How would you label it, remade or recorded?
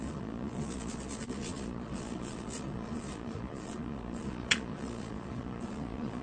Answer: remade